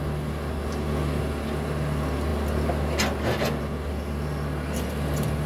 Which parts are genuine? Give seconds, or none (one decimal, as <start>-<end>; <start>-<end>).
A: 0.0-5.5